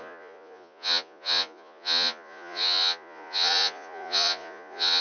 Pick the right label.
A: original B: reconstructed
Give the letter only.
B